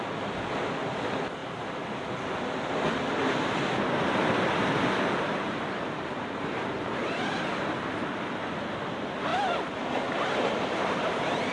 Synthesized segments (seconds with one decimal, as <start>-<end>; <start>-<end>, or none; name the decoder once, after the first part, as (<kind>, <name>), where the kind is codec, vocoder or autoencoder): 5.3-8.1 (vocoder, BigVGAN v2)